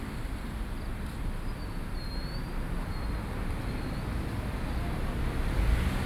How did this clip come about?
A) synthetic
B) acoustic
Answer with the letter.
B